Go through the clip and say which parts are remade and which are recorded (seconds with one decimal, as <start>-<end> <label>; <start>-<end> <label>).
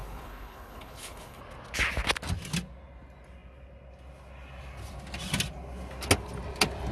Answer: 0.0-1.4 remade; 1.4-6.9 recorded